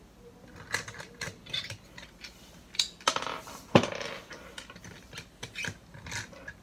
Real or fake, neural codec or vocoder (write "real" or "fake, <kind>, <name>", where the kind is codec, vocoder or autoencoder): real